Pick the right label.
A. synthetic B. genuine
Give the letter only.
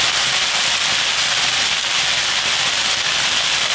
B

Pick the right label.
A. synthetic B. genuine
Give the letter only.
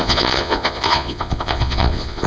A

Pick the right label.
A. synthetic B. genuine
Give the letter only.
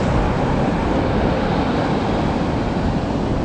B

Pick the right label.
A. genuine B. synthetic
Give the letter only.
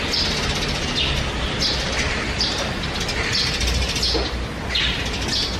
A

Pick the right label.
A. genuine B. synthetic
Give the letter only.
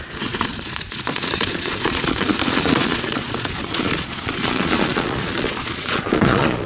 B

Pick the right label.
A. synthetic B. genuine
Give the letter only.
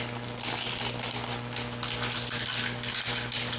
B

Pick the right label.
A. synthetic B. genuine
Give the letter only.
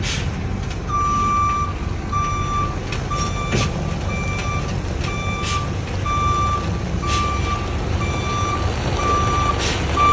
B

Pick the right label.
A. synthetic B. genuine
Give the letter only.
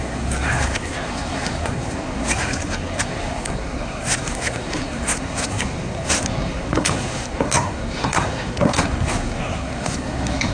A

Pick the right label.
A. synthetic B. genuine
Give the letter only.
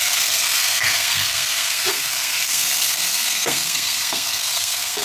A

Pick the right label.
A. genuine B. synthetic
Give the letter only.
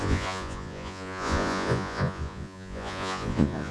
B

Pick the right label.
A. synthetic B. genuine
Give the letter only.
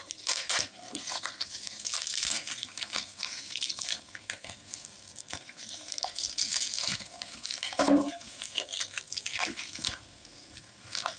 A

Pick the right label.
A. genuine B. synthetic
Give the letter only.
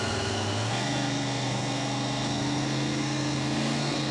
B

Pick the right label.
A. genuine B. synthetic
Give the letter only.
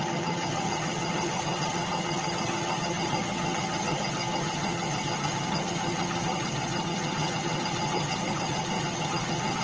B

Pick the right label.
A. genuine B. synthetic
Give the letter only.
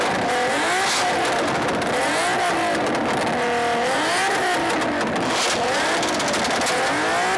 A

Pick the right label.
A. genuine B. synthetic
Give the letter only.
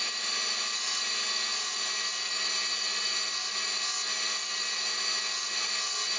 A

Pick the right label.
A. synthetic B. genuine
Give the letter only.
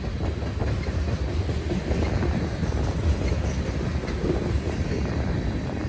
B